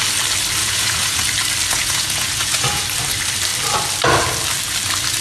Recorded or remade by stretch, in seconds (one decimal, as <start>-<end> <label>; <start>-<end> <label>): 0.0-0.6 recorded; 0.6-1.2 remade; 1.2-1.7 recorded; 1.7-2.8 remade; 2.8-5.2 recorded